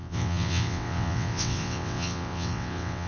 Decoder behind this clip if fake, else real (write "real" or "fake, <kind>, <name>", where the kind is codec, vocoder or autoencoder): fake, vocoder, WaveNeXt